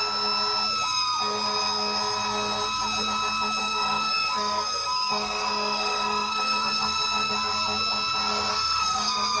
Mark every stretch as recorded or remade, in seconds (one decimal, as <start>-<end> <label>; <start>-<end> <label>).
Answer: 0.0-3.6 recorded; 3.6-7.3 remade; 7.3-8.5 recorded; 8.5-9.4 remade